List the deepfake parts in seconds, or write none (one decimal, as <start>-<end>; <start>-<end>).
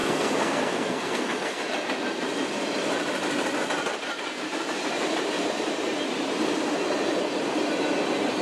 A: 0.0-1.6